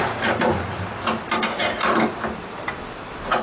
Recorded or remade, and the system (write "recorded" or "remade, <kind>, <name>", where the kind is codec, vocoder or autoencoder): recorded